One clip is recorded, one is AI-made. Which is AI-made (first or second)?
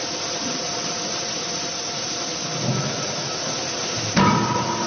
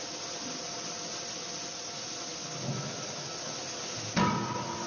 first